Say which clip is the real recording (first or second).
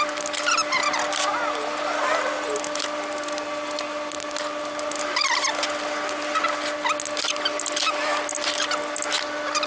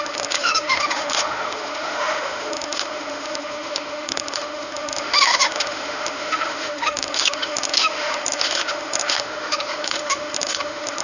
first